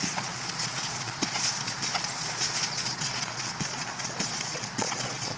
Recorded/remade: remade